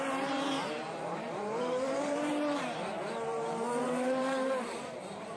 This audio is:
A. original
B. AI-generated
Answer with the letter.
B